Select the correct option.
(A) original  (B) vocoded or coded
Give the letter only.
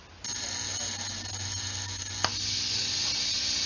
A